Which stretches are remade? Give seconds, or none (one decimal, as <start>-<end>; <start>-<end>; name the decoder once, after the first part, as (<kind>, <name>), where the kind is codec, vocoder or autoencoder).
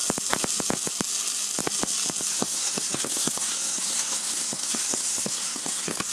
2.3-6.1 (codec, SNAC)